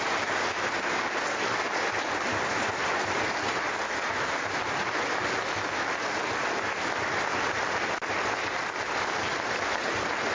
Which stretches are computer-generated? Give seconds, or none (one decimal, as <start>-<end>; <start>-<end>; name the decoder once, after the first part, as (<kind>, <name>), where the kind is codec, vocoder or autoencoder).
none

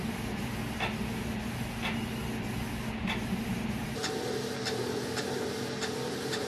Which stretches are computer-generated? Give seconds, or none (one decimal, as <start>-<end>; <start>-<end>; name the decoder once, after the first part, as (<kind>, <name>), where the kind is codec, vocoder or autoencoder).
0.0-2.2 (vocoder, BigVGAN v2); 3.0-4.0

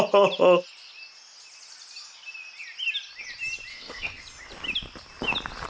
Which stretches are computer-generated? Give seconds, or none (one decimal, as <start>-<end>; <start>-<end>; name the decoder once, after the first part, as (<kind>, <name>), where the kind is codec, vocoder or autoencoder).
3.7-4.2 (codec, SNAC)